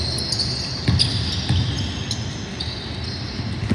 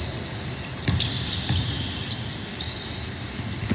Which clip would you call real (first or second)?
first